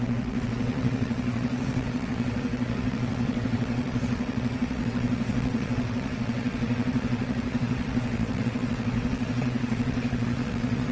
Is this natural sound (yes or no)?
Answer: no